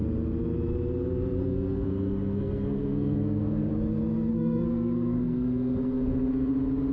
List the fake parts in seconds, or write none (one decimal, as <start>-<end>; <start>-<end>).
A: 1.4-3.7; 4.3-6.5